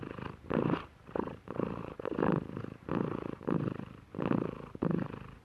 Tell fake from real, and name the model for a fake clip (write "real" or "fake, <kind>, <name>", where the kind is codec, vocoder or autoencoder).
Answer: fake, vocoder, BigVGAN v2